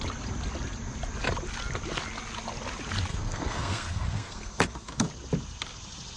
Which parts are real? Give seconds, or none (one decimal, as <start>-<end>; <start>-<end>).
0.0-3.1; 5.1-6.2